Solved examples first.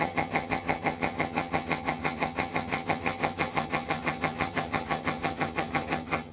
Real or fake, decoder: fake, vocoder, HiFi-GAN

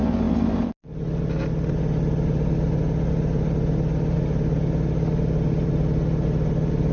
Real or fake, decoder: real